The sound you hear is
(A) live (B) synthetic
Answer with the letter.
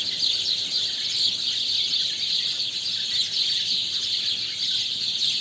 A